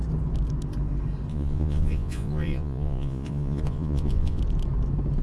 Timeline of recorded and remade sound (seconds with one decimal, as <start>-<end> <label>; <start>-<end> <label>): 0.0-1.3 recorded; 1.3-4.4 remade; 4.4-5.2 recorded